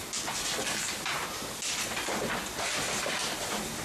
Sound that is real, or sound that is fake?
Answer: real